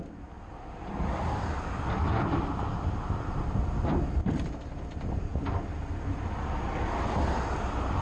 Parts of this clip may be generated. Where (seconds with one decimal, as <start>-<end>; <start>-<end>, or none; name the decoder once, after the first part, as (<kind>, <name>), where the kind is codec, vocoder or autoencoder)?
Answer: none